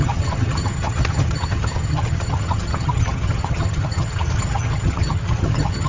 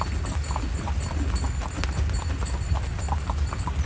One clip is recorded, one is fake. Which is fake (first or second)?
first